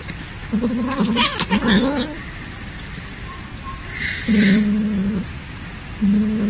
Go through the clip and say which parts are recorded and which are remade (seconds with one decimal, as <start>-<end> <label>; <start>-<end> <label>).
0.0-6.5 remade